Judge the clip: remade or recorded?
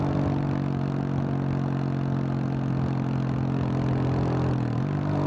recorded